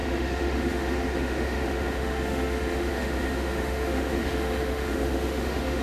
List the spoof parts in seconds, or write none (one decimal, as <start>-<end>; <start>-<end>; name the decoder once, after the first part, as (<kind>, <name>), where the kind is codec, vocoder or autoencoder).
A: 0.0-5.8 (autoencoder, DAC-VAE)